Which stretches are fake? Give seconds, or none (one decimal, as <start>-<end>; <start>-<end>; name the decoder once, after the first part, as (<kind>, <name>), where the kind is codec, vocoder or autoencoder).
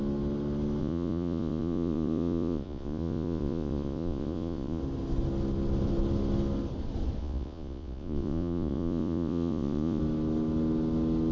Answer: 0.8-4.8 (vocoder, Vocos); 7.2-10.0